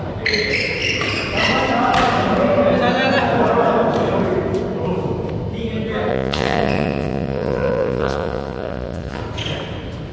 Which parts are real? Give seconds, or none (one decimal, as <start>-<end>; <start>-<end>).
0.0-6.1; 9.2-10.1